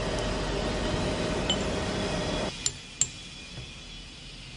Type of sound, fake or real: real